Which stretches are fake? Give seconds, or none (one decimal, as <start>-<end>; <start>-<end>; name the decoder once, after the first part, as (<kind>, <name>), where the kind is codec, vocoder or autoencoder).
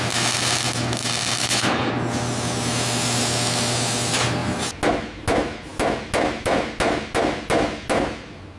1.4-1.9 (codec, HILCodec)